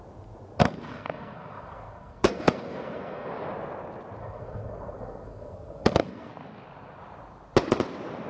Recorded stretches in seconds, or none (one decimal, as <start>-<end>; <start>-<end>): 0.0-0.6; 3.3-4.2; 6.3-8.3